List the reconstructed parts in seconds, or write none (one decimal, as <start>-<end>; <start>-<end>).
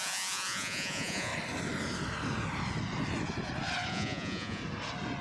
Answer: 0.0-1.3; 3.9-4.6